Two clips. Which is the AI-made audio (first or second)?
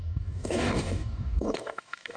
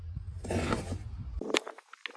first